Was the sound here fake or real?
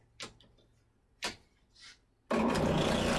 real